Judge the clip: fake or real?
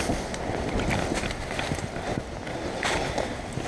real